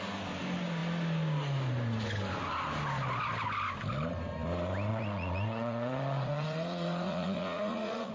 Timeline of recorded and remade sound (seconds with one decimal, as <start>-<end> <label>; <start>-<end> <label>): 0.0-4.9 recorded; 4.9-8.1 remade